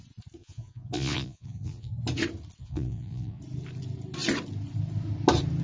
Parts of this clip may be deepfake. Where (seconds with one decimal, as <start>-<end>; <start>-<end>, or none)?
0.4-1.9; 2.6-3.4